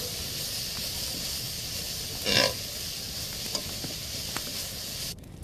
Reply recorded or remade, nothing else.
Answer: recorded